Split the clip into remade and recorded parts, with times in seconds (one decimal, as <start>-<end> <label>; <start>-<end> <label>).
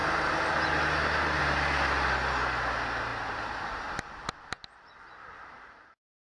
0.0-6.4 recorded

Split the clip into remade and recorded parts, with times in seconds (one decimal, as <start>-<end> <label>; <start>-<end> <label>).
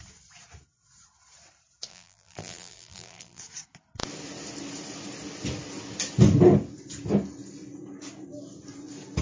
0.0-1.9 recorded; 1.9-3.4 remade; 3.4-9.2 recorded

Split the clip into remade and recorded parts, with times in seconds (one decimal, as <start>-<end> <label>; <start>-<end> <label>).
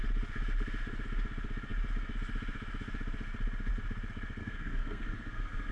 0.0-4.4 recorded; 4.4-5.7 remade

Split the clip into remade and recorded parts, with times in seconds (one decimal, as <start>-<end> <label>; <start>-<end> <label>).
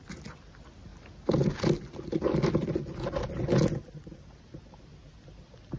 0.0-5.8 recorded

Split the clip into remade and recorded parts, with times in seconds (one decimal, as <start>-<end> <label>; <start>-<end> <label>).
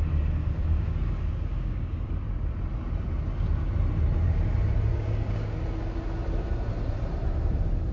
0.0-0.4 recorded; 0.4-2.1 remade; 2.1-4.9 recorded; 4.9-5.6 remade; 5.6-7.9 recorded